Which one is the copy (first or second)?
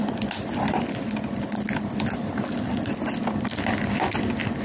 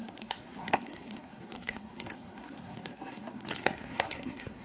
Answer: second